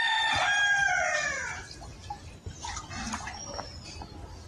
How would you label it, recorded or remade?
recorded